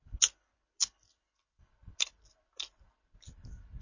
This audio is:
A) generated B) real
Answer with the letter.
B